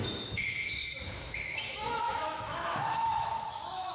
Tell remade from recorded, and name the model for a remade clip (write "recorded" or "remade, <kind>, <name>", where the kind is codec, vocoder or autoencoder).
remade, autoencoder, DAC-VAE